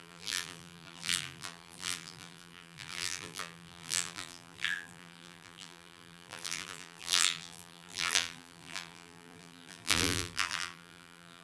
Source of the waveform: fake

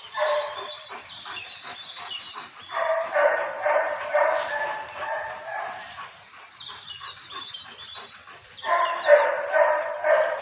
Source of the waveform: fake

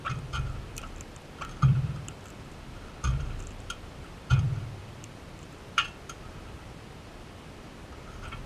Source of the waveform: fake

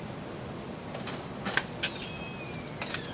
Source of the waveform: real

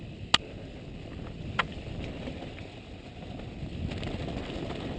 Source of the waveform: real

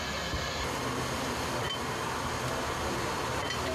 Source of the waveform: real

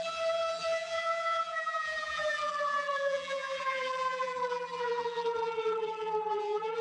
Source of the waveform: fake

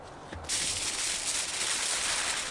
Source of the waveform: fake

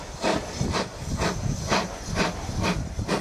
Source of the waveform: real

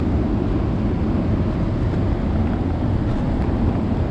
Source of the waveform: real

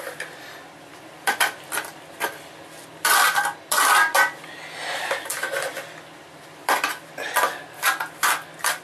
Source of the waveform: real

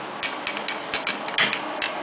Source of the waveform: real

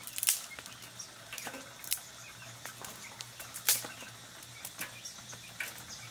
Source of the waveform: real